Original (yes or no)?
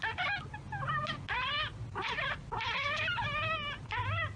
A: yes